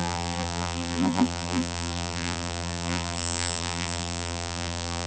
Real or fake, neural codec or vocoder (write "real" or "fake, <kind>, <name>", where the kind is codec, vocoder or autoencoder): fake, vocoder, BigVGAN v2